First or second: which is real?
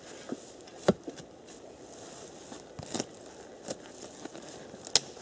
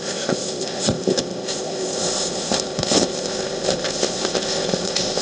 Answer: first